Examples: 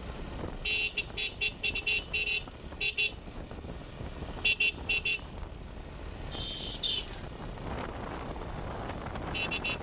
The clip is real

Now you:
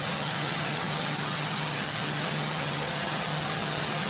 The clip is fake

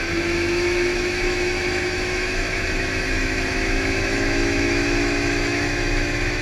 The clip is fake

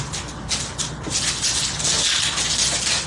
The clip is real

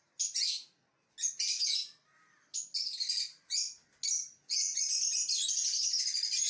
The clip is real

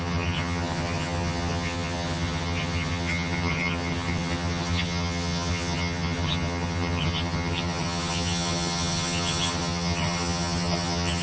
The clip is fake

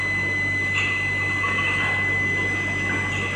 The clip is real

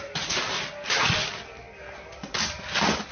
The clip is real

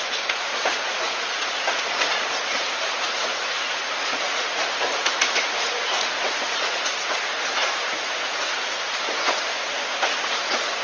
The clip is fake